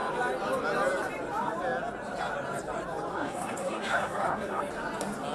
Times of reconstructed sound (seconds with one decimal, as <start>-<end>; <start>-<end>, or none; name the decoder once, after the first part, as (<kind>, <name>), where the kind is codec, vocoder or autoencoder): 3.1-4.6 (codec, SNAC)